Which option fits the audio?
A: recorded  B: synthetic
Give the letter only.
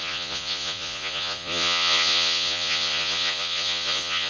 B